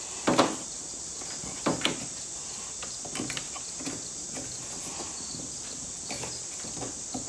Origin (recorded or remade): recorded